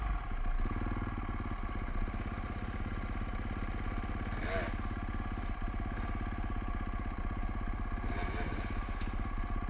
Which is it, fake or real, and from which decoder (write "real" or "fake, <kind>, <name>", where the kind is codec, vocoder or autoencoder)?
real